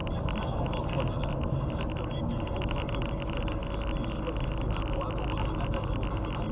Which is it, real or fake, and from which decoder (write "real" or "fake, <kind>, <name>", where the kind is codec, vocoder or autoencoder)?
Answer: real